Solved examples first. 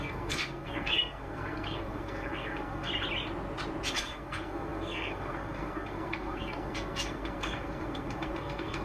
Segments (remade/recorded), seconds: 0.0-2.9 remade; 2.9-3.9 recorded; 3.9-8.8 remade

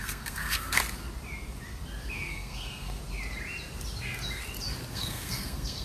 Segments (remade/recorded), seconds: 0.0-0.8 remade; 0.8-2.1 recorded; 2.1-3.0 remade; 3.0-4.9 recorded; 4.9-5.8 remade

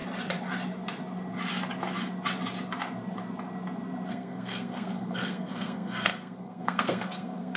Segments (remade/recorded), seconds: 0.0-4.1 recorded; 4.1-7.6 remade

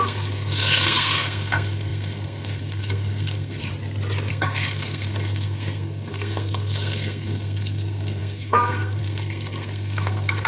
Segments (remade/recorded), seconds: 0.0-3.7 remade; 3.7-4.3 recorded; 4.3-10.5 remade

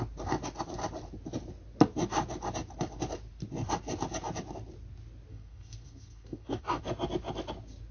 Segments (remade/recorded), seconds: 0.0-5.3 recorded; 5.3-6.8 remade; 6.8-7.9 recorded

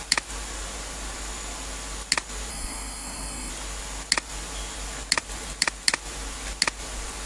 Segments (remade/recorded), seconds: 0.0-2.5 recorded; 2.5-3.5 remade; 3.5-7.3 recorded

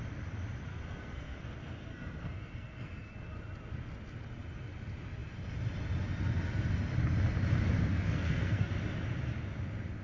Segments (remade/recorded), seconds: 0.0-0.7 recorded; 0.7-1.4 remade; 1.4-1.9 recorded; 1.9-3.1 remade; 3.1-7.9 recorded; 7.9-8.7 remade; 8.7-10.0 recorded